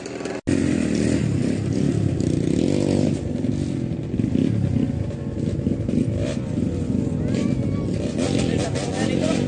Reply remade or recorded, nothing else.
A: recorded